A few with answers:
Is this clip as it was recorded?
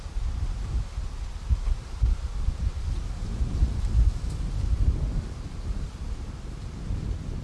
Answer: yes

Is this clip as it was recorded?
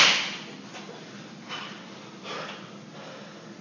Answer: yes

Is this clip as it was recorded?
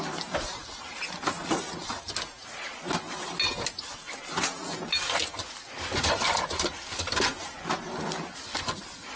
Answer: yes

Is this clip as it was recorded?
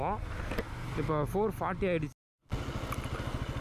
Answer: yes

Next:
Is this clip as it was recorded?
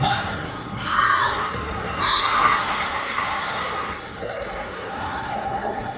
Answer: no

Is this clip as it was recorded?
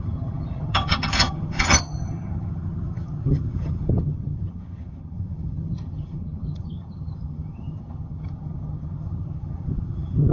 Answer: no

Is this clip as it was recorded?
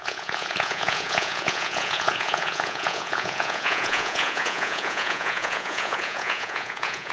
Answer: no